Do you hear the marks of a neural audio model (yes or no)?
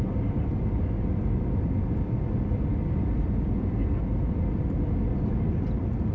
yes